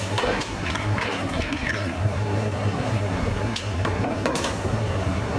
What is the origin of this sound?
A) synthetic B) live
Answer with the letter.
A